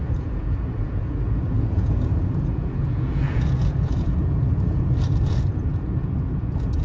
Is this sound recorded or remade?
remade